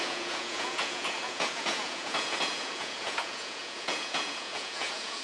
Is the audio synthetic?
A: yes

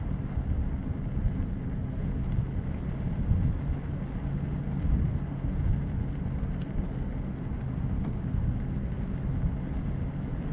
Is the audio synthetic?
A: no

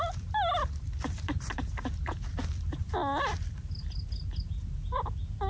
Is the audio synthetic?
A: no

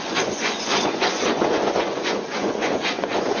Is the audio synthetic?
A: yes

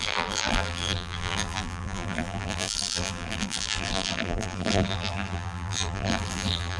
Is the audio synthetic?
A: yes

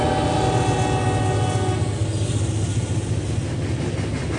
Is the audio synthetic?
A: no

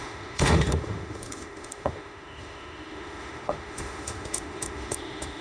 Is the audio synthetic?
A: yes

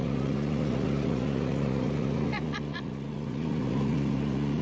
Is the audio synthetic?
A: yes